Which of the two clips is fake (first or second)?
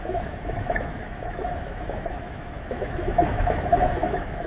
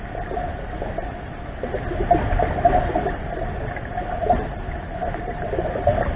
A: first